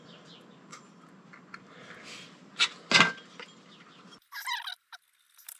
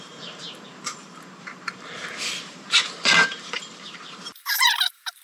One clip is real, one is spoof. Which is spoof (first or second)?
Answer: second